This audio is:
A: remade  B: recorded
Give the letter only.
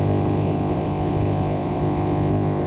A